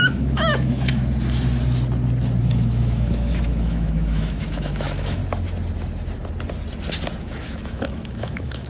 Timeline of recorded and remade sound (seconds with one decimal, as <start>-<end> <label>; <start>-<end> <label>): 0.0-1.0 remade; 1.0-2.4 recorded; 2.4-5.2 remade; 5.2-7.2 recorded; 7.2-8.7 remade